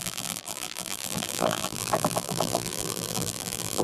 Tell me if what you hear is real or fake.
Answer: fake